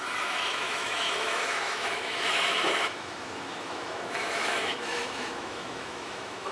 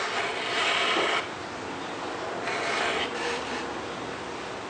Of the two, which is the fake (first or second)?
first